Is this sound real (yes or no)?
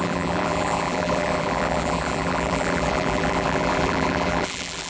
no